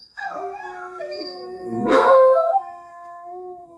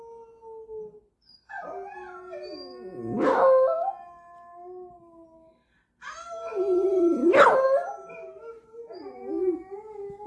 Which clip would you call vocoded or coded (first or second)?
first